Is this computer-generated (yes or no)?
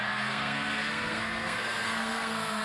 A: yes